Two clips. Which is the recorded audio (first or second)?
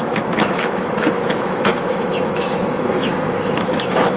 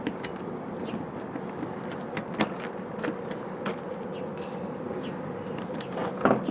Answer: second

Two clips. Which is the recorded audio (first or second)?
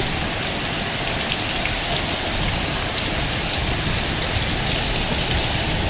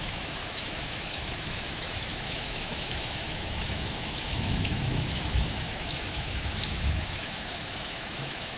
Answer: first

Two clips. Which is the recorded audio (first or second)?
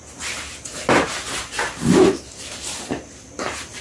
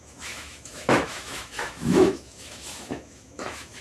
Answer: first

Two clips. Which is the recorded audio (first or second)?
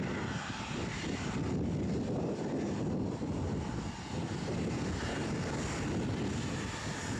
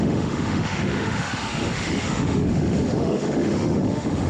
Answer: first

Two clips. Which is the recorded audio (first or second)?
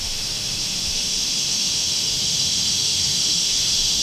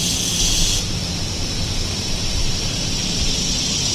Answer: second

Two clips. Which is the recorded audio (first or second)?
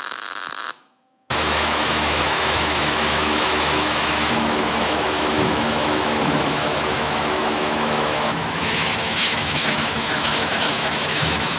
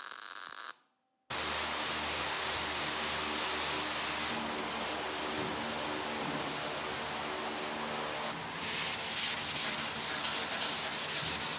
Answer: second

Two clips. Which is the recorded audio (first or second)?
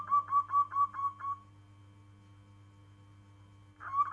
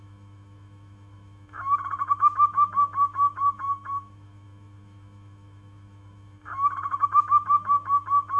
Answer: first